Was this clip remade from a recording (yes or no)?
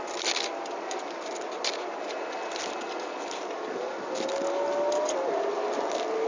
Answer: no